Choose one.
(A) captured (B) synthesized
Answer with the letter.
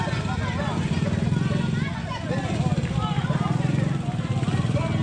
A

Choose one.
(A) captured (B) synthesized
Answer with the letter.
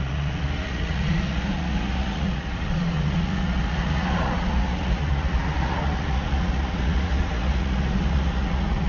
B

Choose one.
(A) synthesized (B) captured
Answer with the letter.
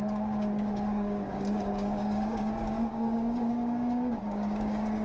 A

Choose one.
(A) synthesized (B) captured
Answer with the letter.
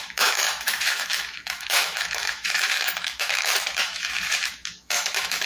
A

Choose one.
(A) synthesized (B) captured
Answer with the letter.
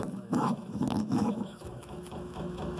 A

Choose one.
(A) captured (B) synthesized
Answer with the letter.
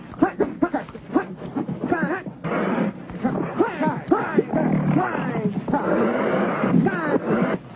A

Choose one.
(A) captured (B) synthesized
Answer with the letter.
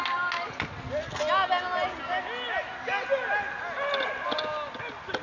A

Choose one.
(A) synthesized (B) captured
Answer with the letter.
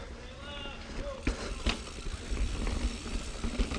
B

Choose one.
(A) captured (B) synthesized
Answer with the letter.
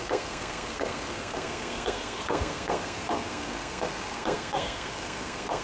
B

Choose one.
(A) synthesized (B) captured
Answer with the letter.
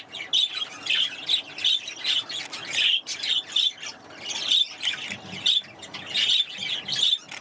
B